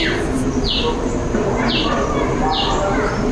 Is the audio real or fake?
real